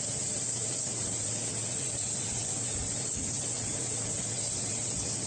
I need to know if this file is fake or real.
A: fake